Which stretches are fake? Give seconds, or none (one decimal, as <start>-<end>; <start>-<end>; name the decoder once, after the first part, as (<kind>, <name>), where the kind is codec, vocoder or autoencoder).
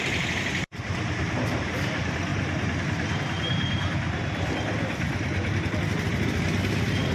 none